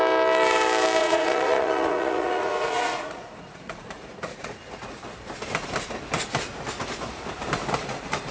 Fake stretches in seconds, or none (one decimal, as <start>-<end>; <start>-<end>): 1.0-4.8